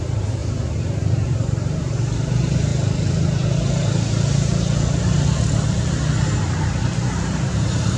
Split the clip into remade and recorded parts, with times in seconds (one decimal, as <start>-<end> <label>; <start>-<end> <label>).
0.0-0.4 remade; 0.4-1.1 recorded; 1.1-2.7 remade; 2.7-6.4 recorded; 6.4-8.0 remade